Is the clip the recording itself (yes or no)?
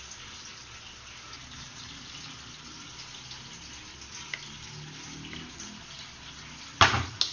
yes